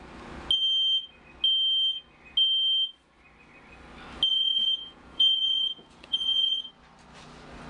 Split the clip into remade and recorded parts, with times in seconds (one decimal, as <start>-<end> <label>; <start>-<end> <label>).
0.0-4.3 recorded; 4.3-6.7 remade; 6.7-7.7 recorded